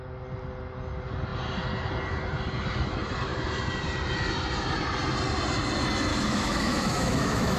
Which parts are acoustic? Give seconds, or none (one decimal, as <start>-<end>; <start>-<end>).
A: 0.0-6.1